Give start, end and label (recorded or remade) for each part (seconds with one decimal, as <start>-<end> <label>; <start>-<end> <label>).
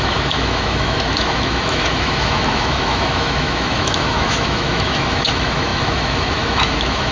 0.0-7.1 remade